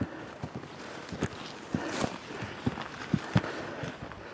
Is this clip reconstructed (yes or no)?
no